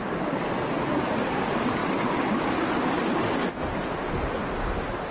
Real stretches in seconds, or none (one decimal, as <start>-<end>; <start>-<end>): 0.0-5.1